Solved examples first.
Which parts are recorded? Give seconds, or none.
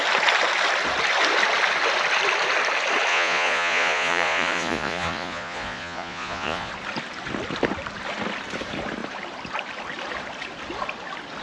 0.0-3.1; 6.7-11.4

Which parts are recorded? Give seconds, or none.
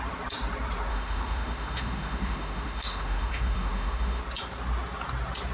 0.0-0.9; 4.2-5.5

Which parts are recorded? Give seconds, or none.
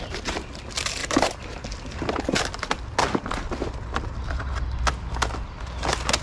0.0-1.0; 1.6-6.2